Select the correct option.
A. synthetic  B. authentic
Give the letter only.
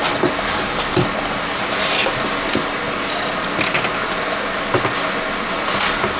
B